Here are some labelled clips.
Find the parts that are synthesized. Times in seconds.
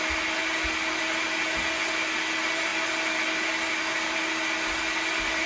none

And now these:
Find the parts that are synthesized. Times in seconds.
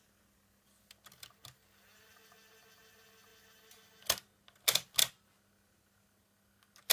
none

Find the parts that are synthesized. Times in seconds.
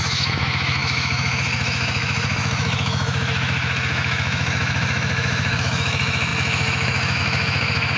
0.0-8.0 (autoencoder, DAC-VAE)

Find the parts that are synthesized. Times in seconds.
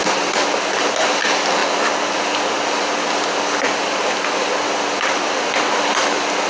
none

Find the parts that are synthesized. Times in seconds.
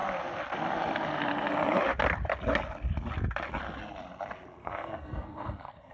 4.6-5.9 (codec, SNAC)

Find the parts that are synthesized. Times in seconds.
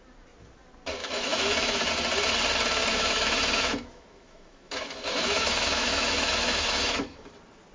1.0-1.9 (autoencoder, DAC-VAE); 2.9-7.3